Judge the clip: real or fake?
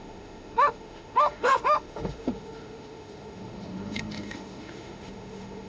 fake